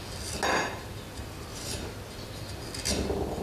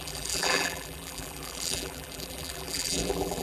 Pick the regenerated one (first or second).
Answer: second